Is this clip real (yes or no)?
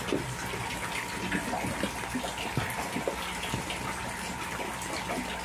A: yes